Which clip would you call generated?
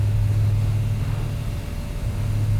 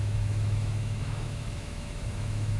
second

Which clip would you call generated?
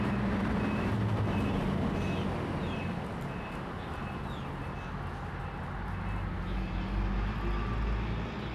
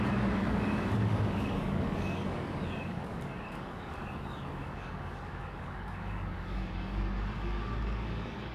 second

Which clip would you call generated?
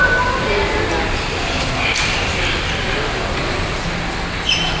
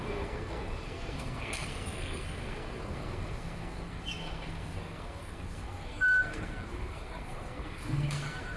second